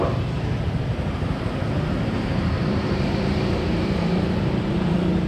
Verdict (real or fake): fake